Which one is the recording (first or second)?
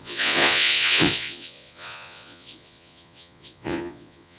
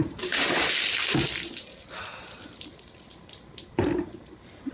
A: second